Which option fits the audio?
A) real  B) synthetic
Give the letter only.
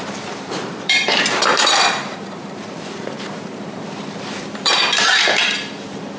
B